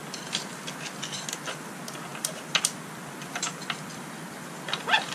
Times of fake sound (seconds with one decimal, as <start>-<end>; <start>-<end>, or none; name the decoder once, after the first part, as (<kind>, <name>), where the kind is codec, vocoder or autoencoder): none